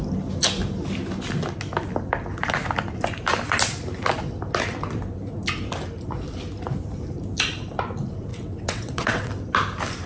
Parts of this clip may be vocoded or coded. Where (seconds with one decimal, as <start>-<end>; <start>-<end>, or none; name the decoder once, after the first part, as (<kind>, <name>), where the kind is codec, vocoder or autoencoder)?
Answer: 8.3-9.3 (vocoder, WaveNeXt)